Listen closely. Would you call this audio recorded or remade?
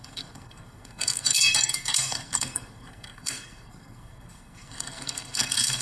remade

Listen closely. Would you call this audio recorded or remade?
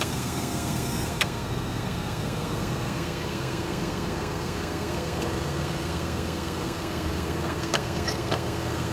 remade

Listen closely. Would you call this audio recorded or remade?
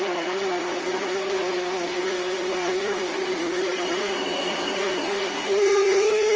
remade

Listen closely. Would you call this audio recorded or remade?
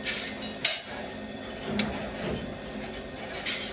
recorded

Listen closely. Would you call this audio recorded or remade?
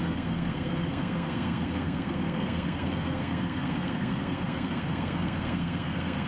remade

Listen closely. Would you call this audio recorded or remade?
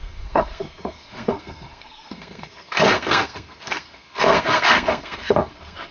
remade